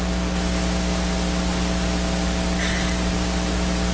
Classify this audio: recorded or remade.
recorded